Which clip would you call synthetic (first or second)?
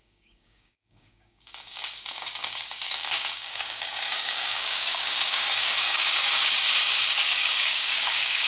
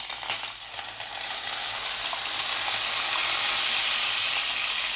first